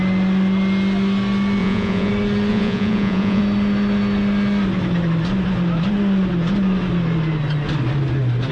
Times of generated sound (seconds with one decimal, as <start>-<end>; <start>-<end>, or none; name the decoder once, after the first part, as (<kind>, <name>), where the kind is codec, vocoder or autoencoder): 1.6-2.1 (vocoder, Vocos); 2.5-3.4